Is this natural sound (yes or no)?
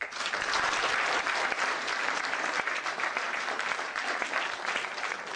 no